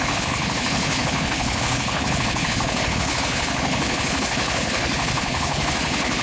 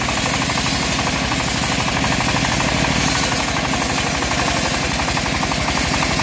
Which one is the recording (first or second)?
second